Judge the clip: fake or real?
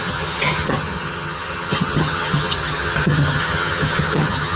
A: fake